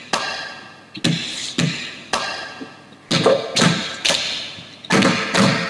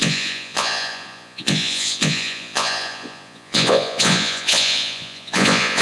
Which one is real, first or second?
first